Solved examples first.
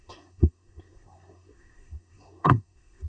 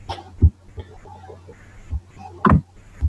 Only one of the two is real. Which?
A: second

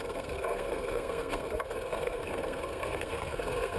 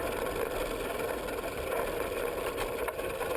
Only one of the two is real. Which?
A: second